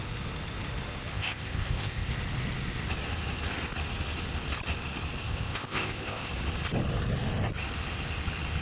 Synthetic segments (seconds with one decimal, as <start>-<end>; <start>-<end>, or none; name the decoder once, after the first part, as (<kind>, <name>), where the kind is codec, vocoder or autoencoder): 1.1-2.1 (codec, ZipCodec); 5.2-6.3